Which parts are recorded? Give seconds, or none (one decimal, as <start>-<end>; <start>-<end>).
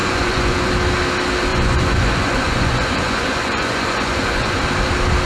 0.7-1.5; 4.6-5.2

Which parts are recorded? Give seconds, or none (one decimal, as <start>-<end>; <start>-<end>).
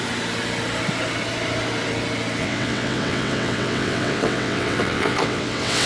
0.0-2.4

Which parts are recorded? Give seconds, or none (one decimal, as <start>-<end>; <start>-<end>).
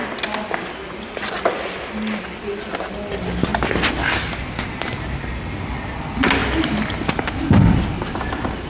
0.0-6.4; 7.4-8.7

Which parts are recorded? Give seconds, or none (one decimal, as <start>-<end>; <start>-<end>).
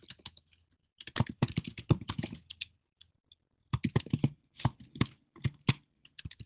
0.0-0.9; 2.1-3.6; 4.4-6.5